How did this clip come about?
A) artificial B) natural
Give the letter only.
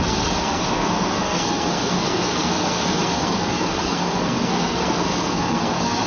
A